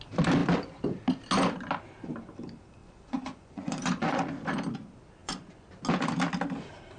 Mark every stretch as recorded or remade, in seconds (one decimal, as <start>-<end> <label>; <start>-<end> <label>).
0.0-2.8 recorded; 2.8-4.2 remade; 4.2-5.2 recorded; 5.2-5.7 remade; 5.7-7.0 recorded

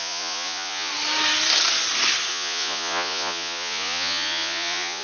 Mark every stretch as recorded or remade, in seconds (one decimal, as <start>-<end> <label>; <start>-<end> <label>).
0.0-0.9 remade; 0.9-2.3 recorded; 2.3-5.0 remade